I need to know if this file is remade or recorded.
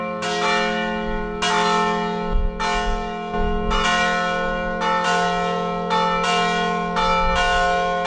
recorded